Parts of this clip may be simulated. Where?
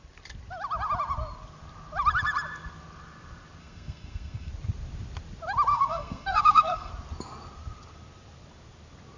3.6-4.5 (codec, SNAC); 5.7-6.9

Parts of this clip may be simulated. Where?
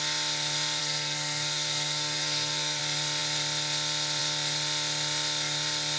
0.8-2.8 (codec, SNAC)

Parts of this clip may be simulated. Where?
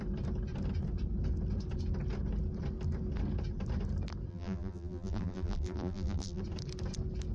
4.3-6.4 (vocoder, BigVGAN v2)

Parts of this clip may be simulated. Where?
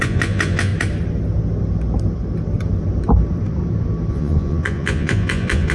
0.0-0.7 (vocoder, Vocos); 4.1-5.7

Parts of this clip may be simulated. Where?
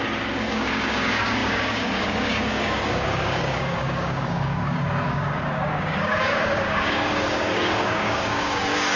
0.0-9.0 (codec, DAC)